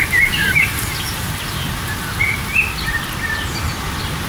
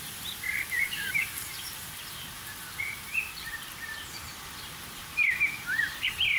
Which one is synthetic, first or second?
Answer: second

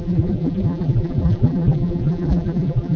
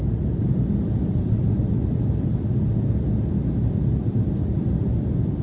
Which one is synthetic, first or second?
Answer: first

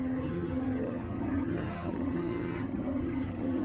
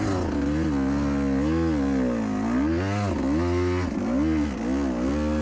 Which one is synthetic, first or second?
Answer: first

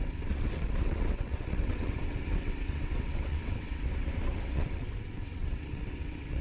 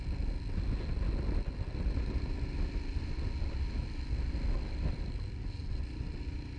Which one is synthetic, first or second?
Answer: first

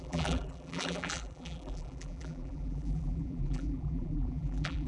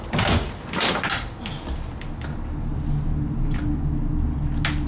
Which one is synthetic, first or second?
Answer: first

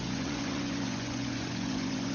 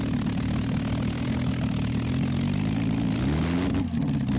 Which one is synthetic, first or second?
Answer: first